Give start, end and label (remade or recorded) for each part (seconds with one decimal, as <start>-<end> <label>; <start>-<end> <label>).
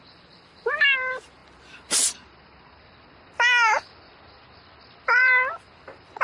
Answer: 0.0-6.2 recorded